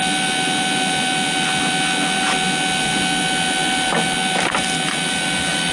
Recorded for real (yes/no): yes